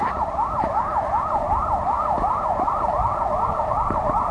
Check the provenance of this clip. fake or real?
fake